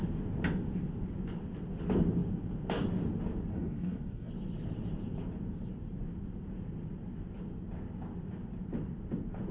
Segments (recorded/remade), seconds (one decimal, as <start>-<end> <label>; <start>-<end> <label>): 0.0-3.5 recorded; 3.5-4.3 remade; 4.3-9.5 recorded